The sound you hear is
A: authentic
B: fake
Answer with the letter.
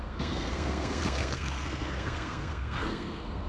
B